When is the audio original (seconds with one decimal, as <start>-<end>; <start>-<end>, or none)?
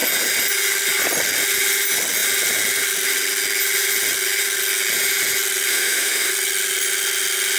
0.0-5.7; 6.3-7.6